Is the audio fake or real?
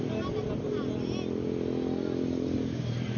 real